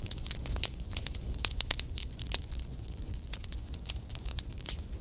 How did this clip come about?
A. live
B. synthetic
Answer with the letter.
B